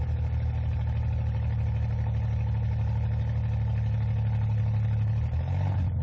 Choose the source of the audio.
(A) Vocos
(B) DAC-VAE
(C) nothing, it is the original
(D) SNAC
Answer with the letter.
C